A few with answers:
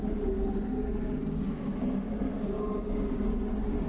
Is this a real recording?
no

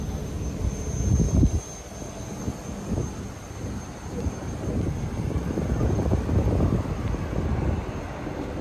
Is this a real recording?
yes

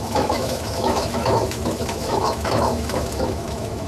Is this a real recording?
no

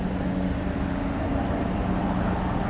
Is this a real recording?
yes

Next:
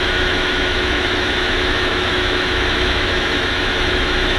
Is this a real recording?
no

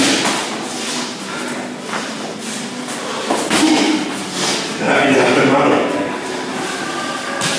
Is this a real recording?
yes